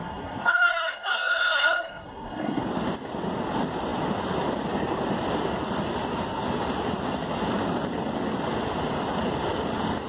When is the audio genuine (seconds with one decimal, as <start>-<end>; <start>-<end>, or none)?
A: 2.6-10.1

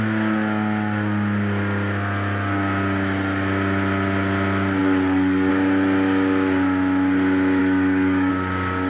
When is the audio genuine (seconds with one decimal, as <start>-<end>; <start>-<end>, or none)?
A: 0.0-4.8; 5.5-7.6; 8.3-8.9

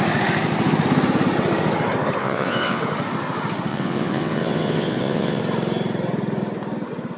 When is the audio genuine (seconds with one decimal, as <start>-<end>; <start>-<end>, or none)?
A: 0.0-2.2; 2.8-3.7; 5.4-7.2